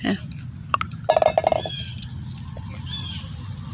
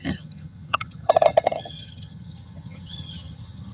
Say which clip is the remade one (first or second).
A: second